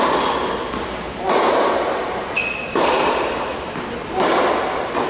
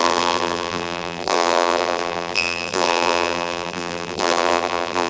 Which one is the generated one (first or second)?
second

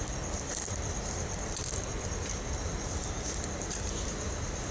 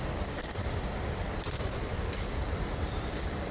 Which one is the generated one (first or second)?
second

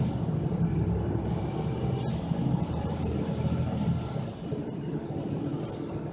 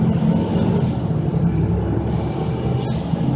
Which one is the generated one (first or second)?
first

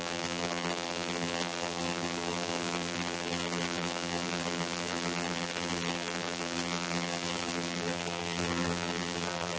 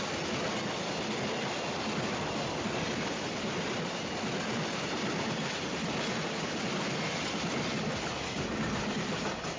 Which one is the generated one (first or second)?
first